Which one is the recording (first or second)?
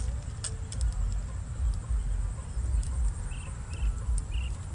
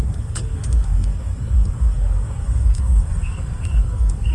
first